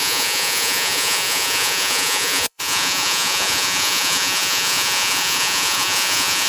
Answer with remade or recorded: remade